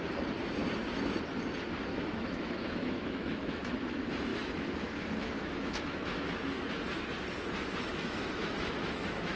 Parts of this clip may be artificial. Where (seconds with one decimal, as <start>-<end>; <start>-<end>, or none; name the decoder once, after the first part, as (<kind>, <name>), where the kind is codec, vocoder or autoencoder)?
1.9-3.6 (autoencoder, DAC-VAE); 4.3-6.7; 7.9-9.4

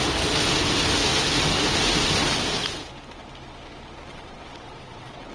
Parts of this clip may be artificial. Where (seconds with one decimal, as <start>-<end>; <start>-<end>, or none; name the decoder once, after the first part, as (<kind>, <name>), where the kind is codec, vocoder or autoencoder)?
4.1-5.3 (vocoder, WaveNeXt)

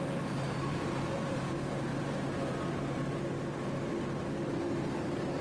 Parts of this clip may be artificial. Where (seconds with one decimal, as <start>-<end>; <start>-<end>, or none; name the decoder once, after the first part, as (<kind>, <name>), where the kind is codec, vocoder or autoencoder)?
0.0-1.9 (vocoder, BigVGAN v2); 4.9-5.4